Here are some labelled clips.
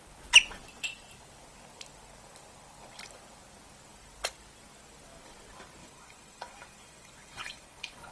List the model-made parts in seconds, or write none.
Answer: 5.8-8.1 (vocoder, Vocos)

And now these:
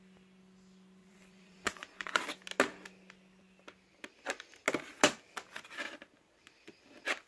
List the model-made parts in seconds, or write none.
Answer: 1.0-2.2 (vocoder, Vocos)